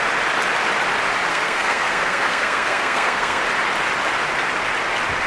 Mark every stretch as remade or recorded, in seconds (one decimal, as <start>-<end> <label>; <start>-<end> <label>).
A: 0.0-1.3 recorded; 1.3-3.4 remade; 3.4-5.3 recorded

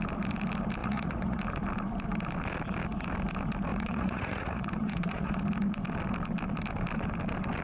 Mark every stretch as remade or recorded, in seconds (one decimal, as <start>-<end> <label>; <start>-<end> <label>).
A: 0.0-0.8 recorded; 0.8-1.4 remade; 1.4-3.7 recorded; 3.7-5.4 remade; 5.4-7.6 recorded